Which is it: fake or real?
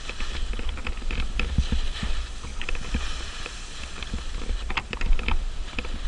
real